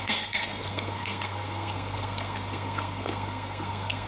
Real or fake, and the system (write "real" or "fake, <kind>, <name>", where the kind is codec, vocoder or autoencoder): fake, codec, SNAC